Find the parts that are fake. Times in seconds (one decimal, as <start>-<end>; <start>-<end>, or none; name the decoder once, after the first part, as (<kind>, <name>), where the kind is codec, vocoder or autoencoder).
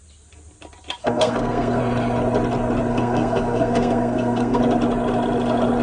1.0-1.8 (codec, SNAC); 2.9-4.6